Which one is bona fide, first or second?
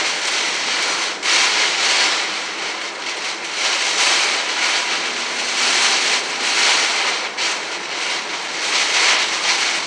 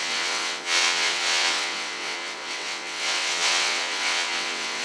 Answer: first